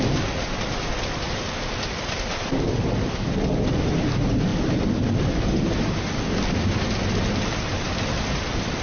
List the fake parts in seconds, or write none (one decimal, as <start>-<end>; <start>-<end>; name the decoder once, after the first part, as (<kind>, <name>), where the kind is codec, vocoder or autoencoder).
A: none